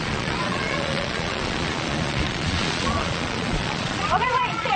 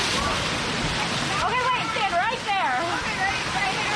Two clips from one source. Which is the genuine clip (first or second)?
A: second